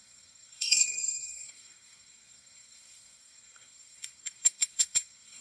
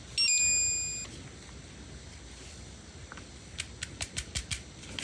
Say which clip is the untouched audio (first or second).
second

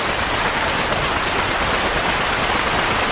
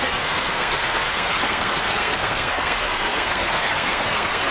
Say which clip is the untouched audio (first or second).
first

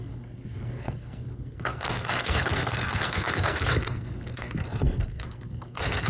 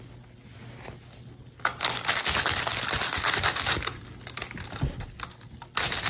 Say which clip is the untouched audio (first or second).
second